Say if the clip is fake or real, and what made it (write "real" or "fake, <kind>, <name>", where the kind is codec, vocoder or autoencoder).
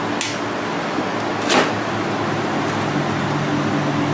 real